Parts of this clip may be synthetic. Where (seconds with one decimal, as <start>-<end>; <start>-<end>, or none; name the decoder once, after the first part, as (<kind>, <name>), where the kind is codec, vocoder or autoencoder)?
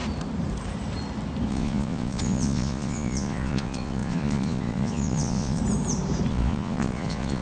1.5-5.6 (vocoder, Vocos); 6.3-7.4